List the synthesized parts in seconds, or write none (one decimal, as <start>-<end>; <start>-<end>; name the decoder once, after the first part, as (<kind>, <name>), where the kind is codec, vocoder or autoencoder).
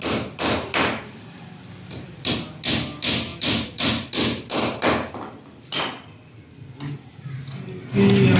1.0-2.4 (vocoder, BigVGAN v2); 3.3-4.1